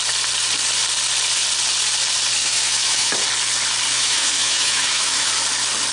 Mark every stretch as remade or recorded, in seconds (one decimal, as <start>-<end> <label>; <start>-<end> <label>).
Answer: 0.0-2.4 recorded; 2.4-3.1 remade; 3.1-3.9 recorded; 3.9-5.3 remade; 5.3-5.9 recorded